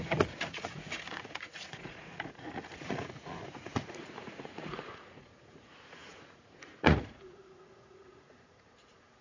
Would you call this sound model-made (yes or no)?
yes